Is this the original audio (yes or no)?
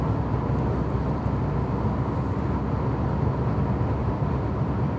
yes